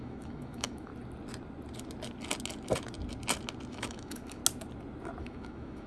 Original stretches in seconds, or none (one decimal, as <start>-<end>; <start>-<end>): 0.9-3.7; 4.4-5.2